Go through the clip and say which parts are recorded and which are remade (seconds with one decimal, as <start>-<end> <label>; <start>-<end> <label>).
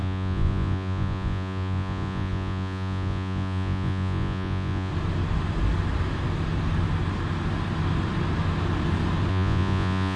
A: 0.0-4.9 remade; 4.9-9.3 recorded; 9.3-10.2 remade